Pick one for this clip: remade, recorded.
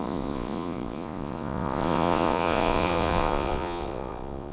remade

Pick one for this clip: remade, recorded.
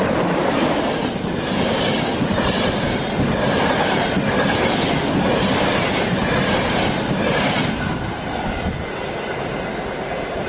recorded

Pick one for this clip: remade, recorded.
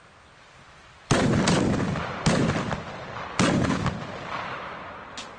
recorded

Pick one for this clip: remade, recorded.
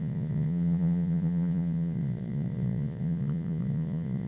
remade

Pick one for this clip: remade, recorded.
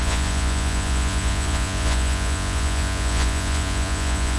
remade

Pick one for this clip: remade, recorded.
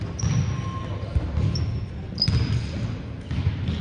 recorded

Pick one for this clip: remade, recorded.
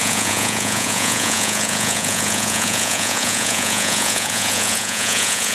remade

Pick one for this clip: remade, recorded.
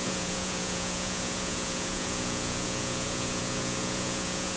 remade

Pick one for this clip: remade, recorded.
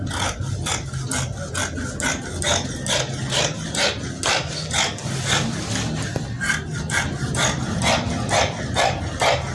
recorded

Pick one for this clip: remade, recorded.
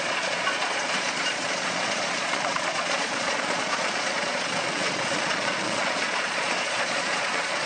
remade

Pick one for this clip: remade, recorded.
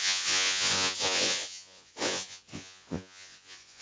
remade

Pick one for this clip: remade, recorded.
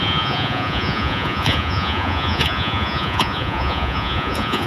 remade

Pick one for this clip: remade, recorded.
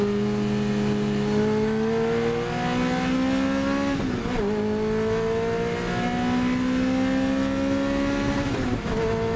recorded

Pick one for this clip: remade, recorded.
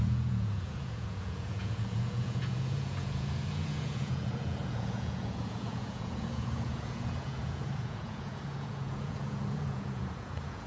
remade